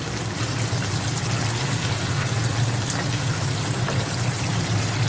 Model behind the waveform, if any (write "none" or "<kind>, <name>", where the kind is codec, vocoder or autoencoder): none